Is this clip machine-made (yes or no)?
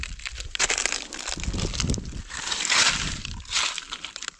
yes